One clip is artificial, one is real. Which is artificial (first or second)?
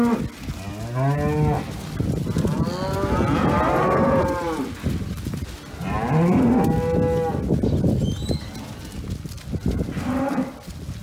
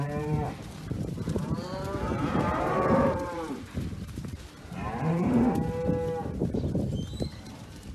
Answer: second